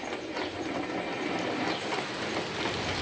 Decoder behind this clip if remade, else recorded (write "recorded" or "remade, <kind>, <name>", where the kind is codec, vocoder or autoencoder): recorded